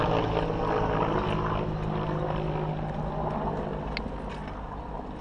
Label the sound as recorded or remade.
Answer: recorded